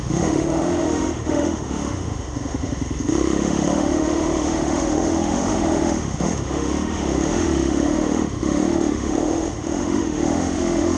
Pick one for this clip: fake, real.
fake